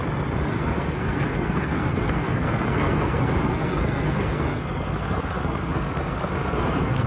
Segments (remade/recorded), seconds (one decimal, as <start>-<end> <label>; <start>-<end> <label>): 0.0-0.5 recorded; 0.5-7.1 remade